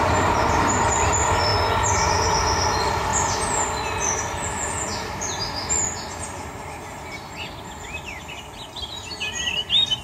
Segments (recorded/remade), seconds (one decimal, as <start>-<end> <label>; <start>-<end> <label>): 0.0-10.0 recorded